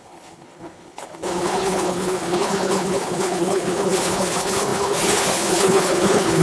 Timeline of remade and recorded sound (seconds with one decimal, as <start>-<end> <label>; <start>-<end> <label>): 0.0-6.4 remade